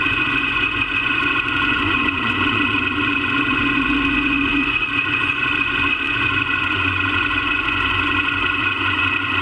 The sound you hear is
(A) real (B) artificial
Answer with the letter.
B